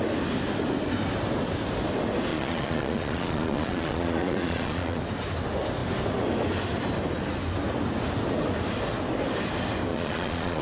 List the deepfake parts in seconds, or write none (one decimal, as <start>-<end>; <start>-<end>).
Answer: 2.3-5.0; 9.9-10.6